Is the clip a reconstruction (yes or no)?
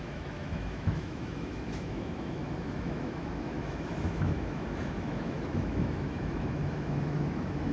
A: yes